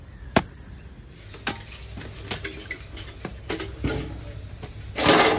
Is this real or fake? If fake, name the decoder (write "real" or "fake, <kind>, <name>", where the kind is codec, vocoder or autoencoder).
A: real